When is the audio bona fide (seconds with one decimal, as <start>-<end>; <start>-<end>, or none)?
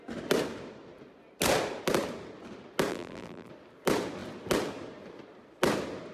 0.0-2.9; 3.5-6.1